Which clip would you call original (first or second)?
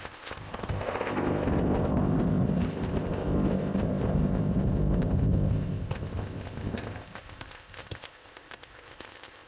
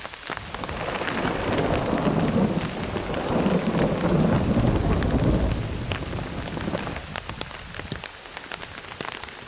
second